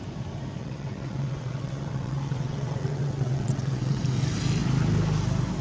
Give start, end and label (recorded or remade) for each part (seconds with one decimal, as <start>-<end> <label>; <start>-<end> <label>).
0.0-0.6 recorded; 0.6-4.0 remade; 4.0-5.6 recorded